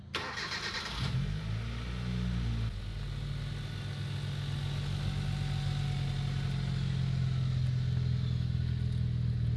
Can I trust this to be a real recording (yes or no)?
yes